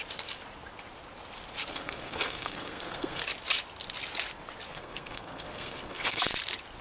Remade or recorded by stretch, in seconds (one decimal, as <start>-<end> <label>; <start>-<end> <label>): 0.0-1.7 recorded; 1.7-3.2 remade; 3.2-4.7 recorded; 4.7-6.2 remade; 6.2-6.8 recorded